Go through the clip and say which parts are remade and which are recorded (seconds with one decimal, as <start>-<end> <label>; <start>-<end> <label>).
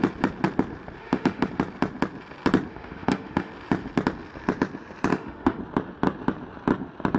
0.0-1.0 recorded; 1.0-1.5 remade; 1.5-2.7 recorded; 2.7-3.5 remade; 3.5-5.1 recorded; 5.1-5.6 remade; 5.6-7.2 recorded